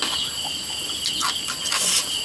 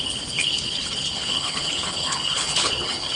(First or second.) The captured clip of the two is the first